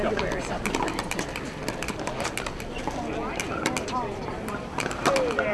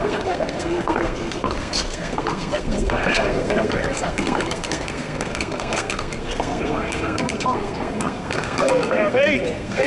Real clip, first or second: first